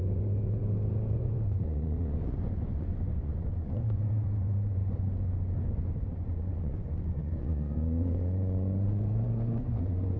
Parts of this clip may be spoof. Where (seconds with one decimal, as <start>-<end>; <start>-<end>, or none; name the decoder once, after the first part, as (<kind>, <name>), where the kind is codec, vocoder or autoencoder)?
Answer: 0.0-0.6 (vocoder, Vocos); 1.1-4.8; 6.0-10.2